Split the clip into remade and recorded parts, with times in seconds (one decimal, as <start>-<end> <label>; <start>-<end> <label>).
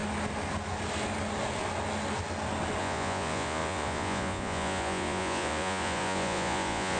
0.0-2.8 recorded; 2.8-7.0 remade